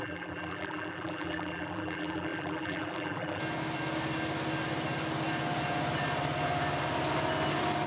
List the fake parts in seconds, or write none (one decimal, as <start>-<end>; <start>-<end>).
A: 0.0-3.4